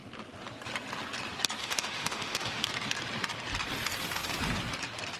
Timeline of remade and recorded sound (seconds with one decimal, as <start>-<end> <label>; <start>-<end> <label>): 0.0-1.6 recorded; 1.6-2.7 remade; 2.7-5.2 recorded